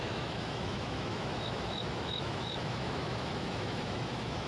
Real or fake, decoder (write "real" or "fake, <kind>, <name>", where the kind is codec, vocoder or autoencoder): fake, autoencoder, DAC-VAE